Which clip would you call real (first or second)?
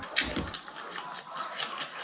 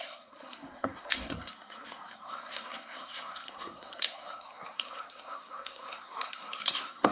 first